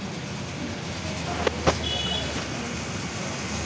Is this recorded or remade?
recorded